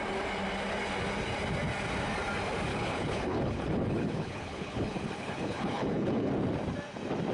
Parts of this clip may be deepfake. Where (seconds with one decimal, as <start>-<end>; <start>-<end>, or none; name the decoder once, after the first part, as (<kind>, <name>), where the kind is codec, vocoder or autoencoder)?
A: 2.7-6.3 (codec, HILCodec)